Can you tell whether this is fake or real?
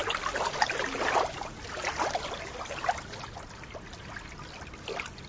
real